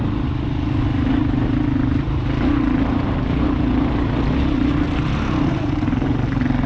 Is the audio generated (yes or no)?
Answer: no